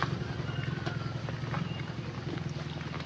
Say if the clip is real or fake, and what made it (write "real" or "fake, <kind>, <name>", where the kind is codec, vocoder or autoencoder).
real